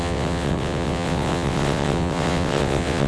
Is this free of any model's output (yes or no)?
no